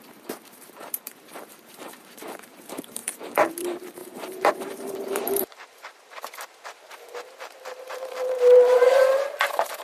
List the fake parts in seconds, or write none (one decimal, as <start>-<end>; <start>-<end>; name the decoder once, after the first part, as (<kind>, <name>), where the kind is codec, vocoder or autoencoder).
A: 0.0-9.8 (vocoder, BigVGAN v2)